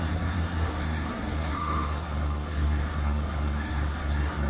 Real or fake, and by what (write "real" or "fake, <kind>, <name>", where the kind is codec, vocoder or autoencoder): fake, codec, SNAC